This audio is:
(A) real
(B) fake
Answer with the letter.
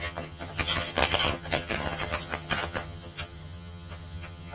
B